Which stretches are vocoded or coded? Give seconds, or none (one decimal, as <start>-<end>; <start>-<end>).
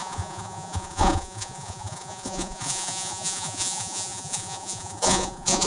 0.0-5.7